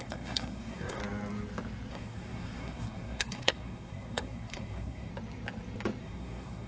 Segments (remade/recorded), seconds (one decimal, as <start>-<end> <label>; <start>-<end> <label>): 0.0-1.0 remade; 1.0-1.9 recorded; 1.9-5.1 remade; 5.1-6.0 recorded; 6.0-6.7 remade